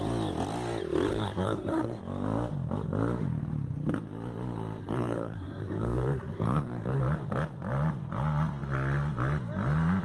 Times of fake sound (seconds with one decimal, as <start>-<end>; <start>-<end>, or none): 1.1-2.0; 4.8-7.0